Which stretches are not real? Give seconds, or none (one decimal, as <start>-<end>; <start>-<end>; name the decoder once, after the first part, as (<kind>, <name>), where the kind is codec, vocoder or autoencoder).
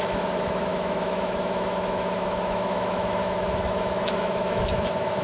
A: 0.0-5.2 (autoencoder, DAC-VAE)